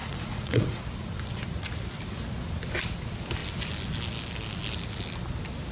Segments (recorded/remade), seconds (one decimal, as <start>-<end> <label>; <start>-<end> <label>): 0.0-0.8 remade; 0.8-5.7 recorded